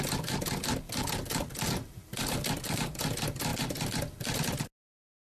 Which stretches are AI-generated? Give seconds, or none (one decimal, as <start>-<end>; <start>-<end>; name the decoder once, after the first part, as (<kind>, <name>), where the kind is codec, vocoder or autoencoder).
0.7-2.9 (vocoder, BigVGAN v2)